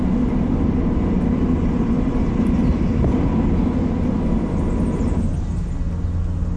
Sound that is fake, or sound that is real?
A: real